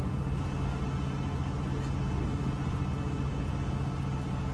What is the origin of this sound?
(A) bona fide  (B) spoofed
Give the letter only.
A